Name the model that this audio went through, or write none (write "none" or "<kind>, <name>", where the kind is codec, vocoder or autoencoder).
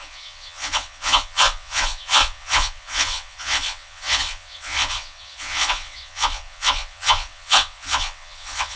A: vocoder, WaveNeXt